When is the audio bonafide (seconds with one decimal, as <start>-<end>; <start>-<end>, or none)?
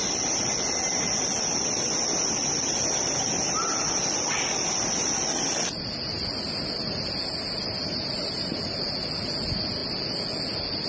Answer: 0.0-10.9